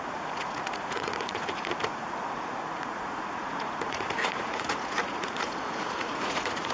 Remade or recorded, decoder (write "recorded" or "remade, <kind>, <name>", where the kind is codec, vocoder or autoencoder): remade, vocoder, Vocos